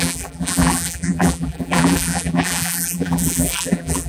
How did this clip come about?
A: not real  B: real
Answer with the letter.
A